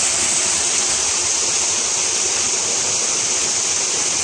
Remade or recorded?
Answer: recorded